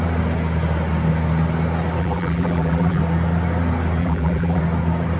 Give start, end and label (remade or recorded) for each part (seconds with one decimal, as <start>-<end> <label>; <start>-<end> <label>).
0.0-2.0 recorded; 2.0-3.0 remade; 3.0-4.0 recorded; 4.0-4.6 remade; 4.6-5.2 recorded